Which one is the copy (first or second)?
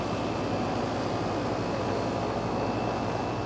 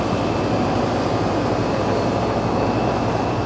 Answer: second